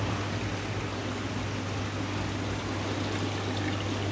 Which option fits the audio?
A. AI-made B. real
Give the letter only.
B